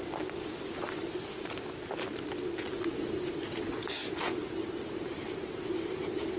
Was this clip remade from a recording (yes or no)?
no